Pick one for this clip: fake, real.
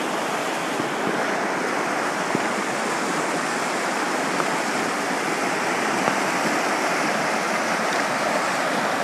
real